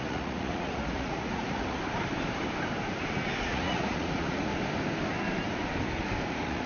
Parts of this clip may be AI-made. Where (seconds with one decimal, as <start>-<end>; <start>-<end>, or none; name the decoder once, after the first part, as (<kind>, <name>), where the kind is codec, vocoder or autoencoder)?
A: 0.0-1.8 (vocoder, Vocos); 3.4-4.5; 6.3-6.7